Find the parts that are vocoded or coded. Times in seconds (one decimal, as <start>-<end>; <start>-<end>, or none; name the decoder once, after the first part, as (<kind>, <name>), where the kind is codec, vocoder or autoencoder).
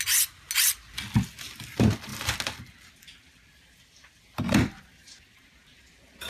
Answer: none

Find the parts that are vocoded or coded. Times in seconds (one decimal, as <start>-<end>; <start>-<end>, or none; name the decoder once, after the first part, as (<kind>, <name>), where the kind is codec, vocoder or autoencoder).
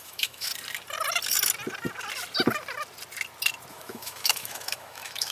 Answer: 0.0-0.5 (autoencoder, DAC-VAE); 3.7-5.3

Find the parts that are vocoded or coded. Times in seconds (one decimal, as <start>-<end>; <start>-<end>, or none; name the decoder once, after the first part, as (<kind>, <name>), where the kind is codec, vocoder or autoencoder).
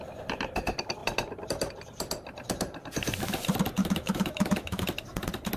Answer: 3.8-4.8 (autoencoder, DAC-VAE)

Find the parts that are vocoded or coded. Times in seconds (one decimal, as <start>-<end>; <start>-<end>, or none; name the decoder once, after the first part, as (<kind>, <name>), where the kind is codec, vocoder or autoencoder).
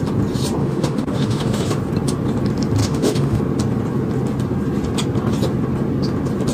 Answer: 0.6-1.8 (autoencoder, DAC-VAE); 2.8-3.4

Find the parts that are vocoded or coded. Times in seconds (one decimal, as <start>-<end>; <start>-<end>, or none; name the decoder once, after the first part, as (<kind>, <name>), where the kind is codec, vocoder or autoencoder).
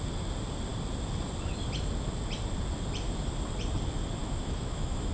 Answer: 4.2-5.1 (autoencoder, DAC-VAE)